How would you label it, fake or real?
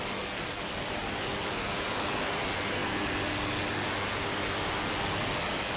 real